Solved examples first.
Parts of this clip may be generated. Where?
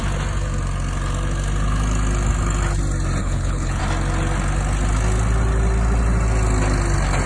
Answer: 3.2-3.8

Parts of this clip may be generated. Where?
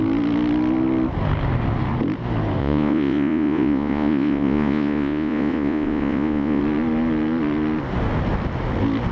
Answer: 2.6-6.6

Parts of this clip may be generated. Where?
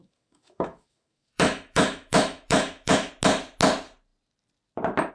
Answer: 0.0-3.1